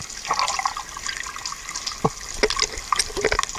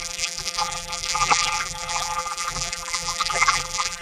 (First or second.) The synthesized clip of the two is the second